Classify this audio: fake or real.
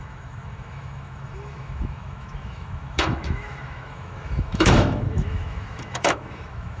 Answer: fake